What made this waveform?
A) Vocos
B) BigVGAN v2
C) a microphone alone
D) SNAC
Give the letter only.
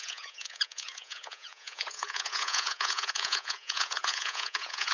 A